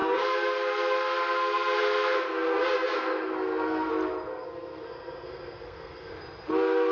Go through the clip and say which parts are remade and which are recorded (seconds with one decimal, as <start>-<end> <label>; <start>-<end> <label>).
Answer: 0.0-3.9 remade; 3.9-4.3 recorded; 4.3-6.1 remade; 6.1-6.9 recorded